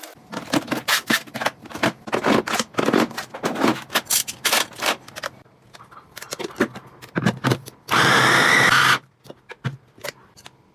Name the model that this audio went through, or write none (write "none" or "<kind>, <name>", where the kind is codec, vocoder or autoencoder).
none